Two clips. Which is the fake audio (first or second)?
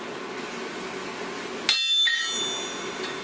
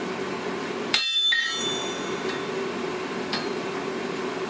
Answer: second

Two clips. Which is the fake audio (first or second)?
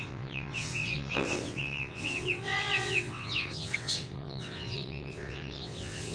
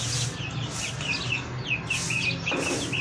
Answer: first